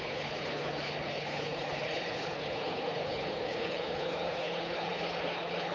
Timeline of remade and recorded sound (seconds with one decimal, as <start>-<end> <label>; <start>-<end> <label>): 0.0-5.7 remade